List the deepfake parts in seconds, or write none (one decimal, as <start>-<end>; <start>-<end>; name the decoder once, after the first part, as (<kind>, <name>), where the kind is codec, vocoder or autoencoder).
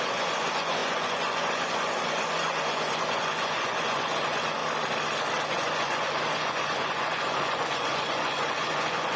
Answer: 0.0-4.6 (vocoder, Vocos); 5.5-9.2